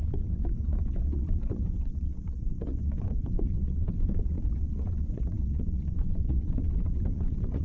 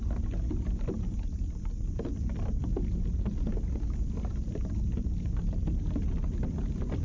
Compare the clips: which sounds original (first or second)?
second